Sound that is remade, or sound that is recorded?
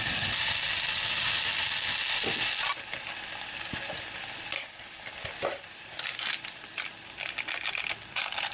recorded